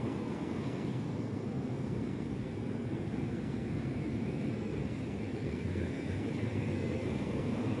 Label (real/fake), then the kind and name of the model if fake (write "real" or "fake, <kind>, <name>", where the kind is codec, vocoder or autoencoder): fake, codec, SNAC